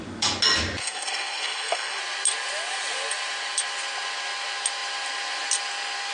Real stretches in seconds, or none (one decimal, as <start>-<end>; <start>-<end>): 0.0-0.8; 2.0-6.1